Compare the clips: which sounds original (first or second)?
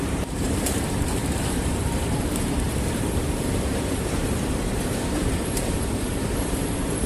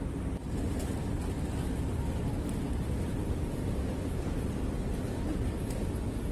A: second